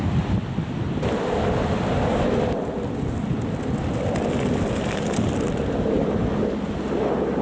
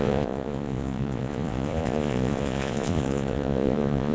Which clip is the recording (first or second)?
first